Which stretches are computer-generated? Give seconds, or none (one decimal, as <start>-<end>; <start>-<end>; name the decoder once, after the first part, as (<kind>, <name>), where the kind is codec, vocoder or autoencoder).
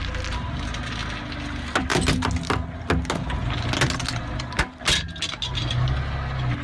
none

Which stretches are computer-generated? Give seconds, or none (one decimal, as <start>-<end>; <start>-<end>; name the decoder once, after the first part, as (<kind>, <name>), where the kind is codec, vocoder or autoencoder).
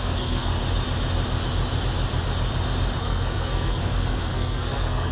0.0-0.6 (codec, SNAC); 3.0-5.1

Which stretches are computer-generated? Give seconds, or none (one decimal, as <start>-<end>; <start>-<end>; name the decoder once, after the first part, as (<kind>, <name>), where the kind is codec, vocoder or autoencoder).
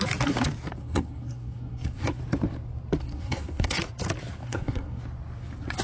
0.8-2.2 (codec, SNAC); 3.0-3.8; 4.4-5.0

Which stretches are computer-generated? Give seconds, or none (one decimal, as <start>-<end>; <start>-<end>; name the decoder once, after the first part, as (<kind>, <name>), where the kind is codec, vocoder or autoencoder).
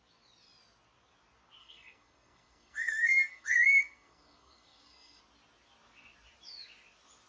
1.6-5.2 (codec, SNAC)